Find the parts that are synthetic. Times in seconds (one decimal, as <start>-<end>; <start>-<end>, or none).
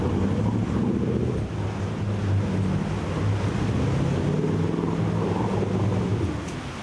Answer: none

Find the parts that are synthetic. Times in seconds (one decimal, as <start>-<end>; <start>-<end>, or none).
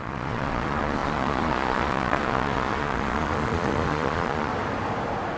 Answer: 0.0-4.5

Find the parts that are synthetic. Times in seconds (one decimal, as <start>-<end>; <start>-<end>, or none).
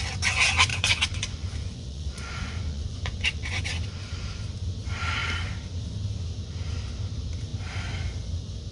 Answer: 0.7-3.6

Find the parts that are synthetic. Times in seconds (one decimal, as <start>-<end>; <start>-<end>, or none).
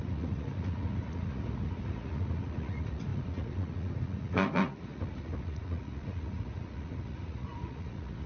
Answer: 0.0-8.3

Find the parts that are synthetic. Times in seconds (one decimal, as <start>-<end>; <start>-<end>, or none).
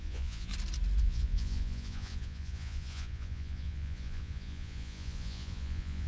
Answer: 0.0-0.5; 1.0-6.1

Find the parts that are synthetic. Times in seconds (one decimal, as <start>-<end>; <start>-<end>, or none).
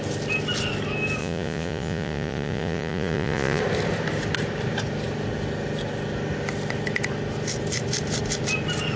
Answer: 1.2-3.6